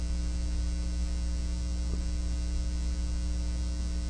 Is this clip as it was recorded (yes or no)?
yes